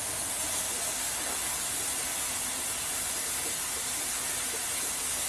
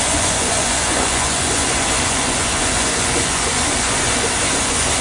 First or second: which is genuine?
first